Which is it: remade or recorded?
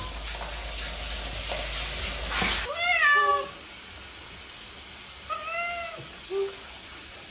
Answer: recorded